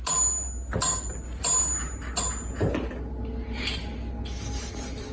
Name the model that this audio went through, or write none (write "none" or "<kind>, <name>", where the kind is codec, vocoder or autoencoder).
none